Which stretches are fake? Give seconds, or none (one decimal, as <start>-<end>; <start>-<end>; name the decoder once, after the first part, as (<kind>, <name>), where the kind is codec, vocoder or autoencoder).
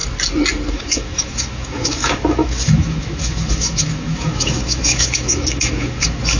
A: 0.7-6.4 (autoencoder, DAC-VAE)